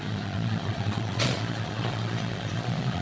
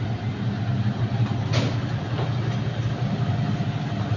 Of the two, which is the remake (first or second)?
first